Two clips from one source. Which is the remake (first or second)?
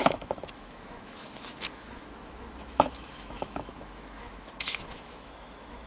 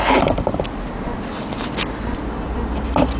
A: first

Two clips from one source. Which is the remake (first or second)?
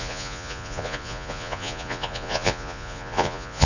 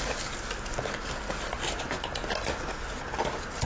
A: first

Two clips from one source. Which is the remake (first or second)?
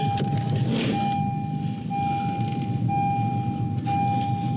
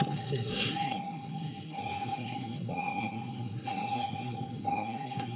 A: second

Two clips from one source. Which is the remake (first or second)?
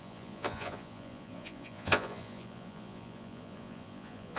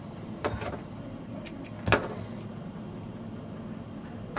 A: first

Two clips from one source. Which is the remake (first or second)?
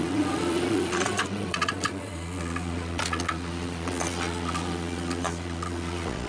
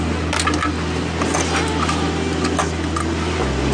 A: first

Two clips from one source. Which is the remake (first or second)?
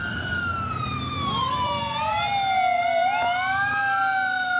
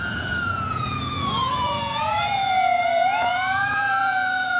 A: second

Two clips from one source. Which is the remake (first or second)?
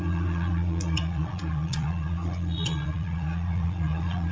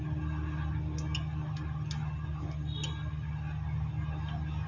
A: first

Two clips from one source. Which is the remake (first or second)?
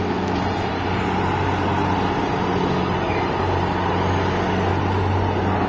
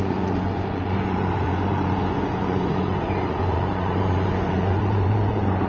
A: second